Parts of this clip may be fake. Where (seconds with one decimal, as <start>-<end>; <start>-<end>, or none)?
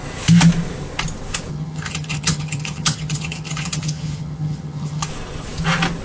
1.5-5.1